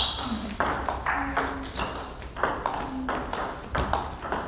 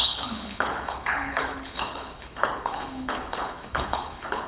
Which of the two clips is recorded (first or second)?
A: first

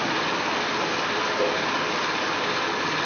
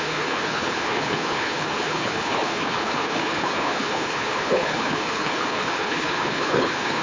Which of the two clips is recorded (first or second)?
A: first